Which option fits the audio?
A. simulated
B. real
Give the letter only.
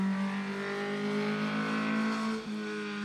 B